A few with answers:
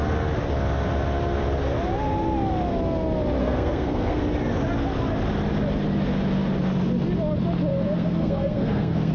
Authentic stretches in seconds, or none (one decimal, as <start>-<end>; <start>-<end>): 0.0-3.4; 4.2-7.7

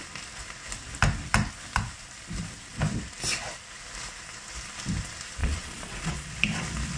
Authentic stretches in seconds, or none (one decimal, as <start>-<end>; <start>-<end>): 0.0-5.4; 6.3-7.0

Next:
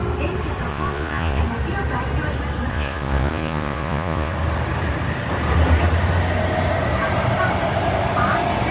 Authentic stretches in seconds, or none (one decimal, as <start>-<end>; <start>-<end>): 0.0-0.7; 1.4-2.7; 4.3-8.7

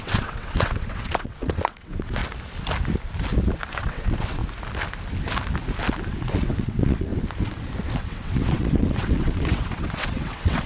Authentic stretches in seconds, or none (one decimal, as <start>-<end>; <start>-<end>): 2.2-3.7; 4.4-6.2; 7.1-8.0

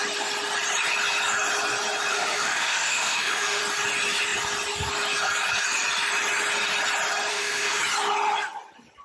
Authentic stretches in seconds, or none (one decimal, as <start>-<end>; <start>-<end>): 0.0-2.1; 3.6-7.3; 7.8-9.0

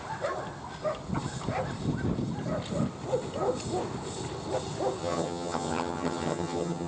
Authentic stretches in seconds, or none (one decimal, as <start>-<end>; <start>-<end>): 0.0-5.0

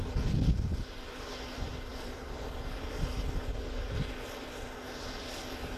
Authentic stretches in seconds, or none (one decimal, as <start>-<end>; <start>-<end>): 0.0-1.9; 3.0-5.8